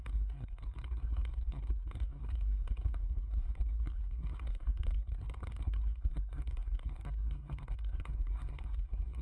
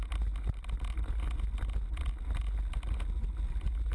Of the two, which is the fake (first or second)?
first